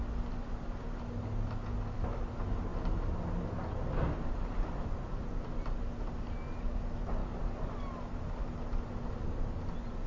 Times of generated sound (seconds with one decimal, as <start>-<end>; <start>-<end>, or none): none